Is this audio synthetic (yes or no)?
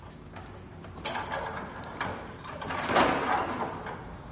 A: no